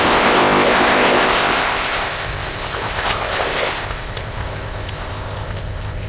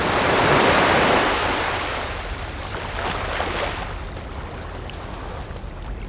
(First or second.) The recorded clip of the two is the second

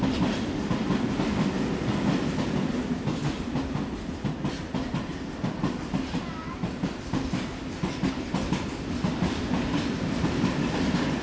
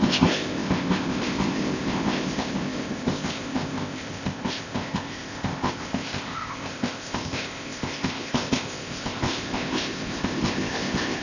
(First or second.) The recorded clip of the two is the first